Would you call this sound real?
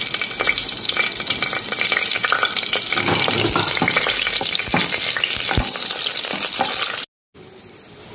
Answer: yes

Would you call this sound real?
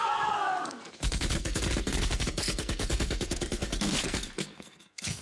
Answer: no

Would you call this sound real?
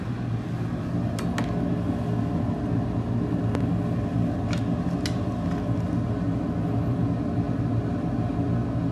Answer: yes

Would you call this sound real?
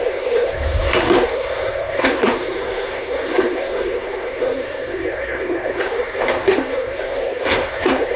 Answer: no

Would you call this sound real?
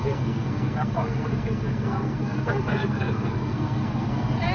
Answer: no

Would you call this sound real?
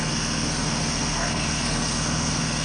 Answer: no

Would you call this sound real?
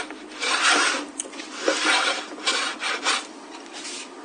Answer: yes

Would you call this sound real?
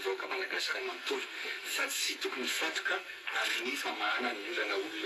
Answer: no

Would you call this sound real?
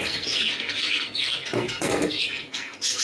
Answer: no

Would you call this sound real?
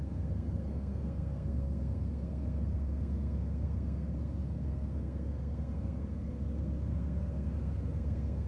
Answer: no